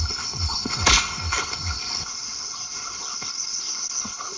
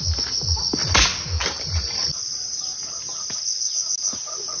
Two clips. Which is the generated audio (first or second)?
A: first